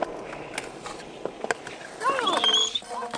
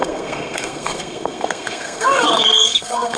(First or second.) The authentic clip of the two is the first